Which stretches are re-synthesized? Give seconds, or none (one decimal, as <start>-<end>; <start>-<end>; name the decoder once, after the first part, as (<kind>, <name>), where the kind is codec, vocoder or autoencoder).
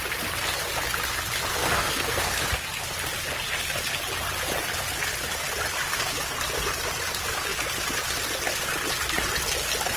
1.5-2.4 (codec, SNAC)